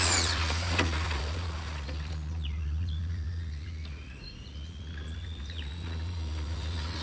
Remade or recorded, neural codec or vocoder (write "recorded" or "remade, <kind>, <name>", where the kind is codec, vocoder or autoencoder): remade, vocoder, Vocos